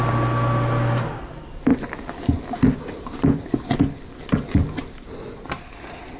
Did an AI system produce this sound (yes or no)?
no